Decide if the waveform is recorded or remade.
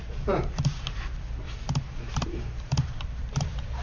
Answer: remade